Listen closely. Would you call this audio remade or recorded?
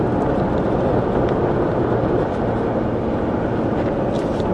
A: recorded